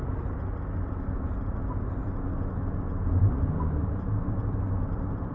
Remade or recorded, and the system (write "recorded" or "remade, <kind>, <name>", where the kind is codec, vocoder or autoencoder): recorded